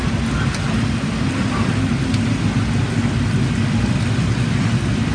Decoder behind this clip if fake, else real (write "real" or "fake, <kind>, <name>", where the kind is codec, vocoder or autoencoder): real